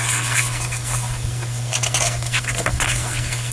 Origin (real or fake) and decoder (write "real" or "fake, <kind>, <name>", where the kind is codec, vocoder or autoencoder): fake, codec, SNAC